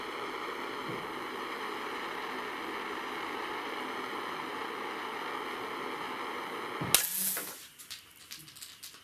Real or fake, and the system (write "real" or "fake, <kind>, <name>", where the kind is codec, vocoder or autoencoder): real